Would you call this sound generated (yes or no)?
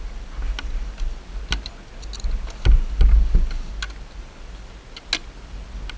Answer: no